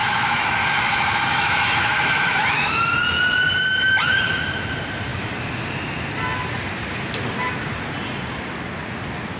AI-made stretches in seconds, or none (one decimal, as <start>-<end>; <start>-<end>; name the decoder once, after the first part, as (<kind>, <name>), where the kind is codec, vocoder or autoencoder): 0.0-3.0 (autoencoder, DAC-VAE)